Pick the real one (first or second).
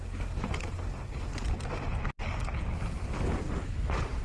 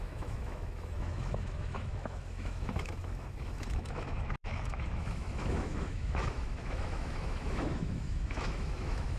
first